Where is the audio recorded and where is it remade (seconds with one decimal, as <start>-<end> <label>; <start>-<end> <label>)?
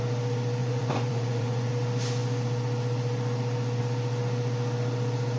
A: 0.0-0.6 recorded; 0.6-1.7 remade; 1.7-5.4 recorded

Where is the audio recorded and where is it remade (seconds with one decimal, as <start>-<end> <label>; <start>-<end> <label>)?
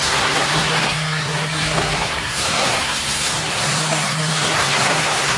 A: 0.0-5.4 remade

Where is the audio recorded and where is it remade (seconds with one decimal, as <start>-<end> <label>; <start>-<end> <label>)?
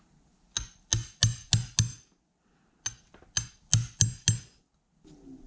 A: 0.0-5.5 recorded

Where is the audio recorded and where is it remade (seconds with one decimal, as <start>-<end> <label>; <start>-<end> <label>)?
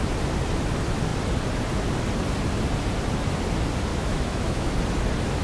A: 0.0-3.9 recorded; 3.9-4.7 remade; 4.7-5.4 recorded